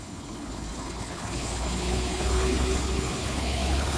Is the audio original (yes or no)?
no